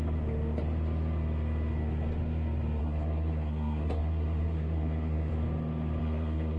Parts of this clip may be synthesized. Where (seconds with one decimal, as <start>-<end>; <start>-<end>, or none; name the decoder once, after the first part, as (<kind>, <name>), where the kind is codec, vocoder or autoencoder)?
2.8-5.3 (codec, SNAC); 6.0-6.6